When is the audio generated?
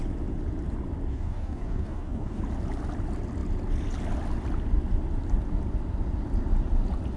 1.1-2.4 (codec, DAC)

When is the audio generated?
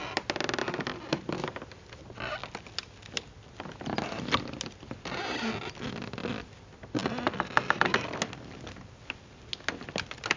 none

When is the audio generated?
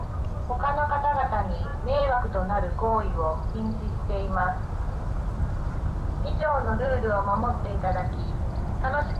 1.7-2.2 (vocoder, BigVGAN v2); 4.0-8.1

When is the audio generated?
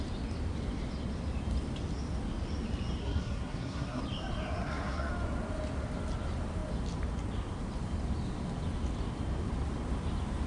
3.0-4.0 (codec, SNAC); 4.6-5.1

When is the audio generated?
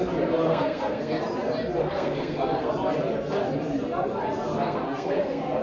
0.5-1.2 (codec, SNAC); 1.8-2.7; 4.5-5.6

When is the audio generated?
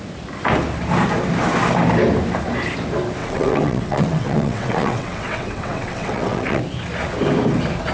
3.2-6.6 (vocoder, WaveNeXt)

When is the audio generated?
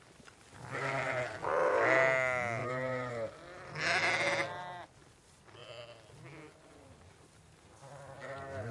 2.6-3.1 (vocoder, BigVGAN v2)